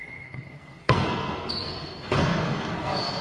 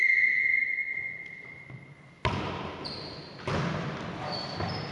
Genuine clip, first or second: second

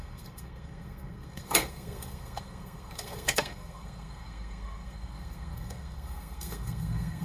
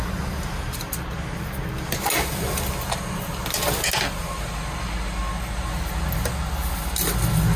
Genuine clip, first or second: second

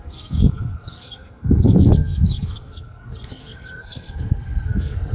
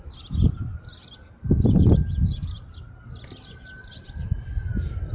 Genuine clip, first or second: second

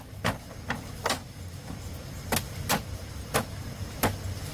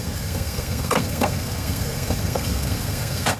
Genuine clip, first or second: first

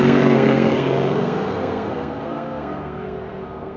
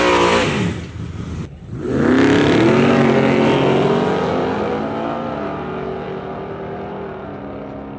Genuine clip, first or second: second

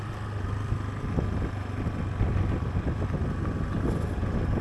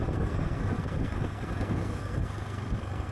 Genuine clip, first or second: first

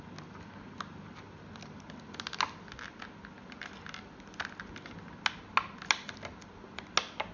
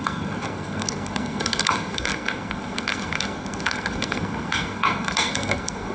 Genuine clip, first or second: first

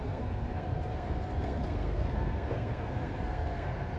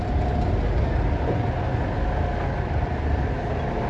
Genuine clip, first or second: second